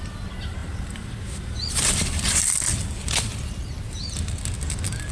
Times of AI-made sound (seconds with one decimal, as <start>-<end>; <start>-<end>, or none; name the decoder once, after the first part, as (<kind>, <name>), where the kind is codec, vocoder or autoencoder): 0.6-2.4 (vocoder, BigVGAN v2); 3.3-4.4